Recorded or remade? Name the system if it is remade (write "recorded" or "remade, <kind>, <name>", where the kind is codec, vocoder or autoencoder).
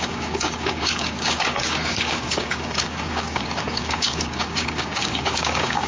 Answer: remade, codec, DAC